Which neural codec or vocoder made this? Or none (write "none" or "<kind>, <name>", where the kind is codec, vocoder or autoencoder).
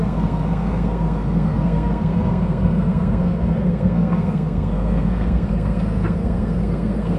codec, SNAC